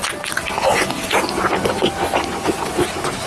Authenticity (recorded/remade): recorded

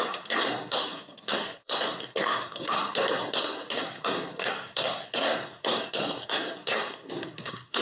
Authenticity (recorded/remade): remade